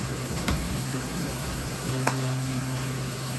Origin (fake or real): fake